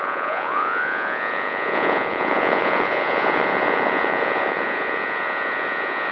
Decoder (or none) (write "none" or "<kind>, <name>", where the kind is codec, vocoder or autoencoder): vocoder, Vocos